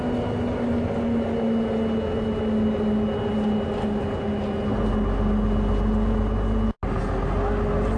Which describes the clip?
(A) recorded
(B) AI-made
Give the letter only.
A